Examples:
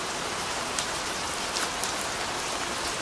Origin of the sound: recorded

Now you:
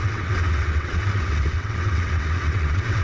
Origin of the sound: remade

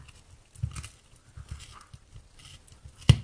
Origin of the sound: recorded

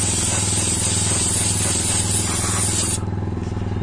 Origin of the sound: recorded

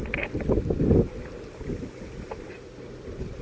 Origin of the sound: recorded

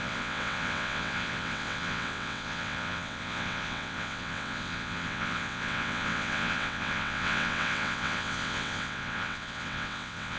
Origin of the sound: remade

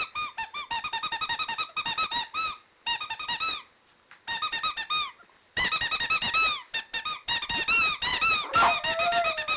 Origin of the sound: recorded